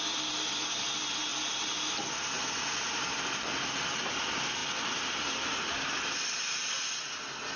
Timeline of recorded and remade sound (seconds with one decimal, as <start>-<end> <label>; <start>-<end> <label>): 0.0-7.6 recorded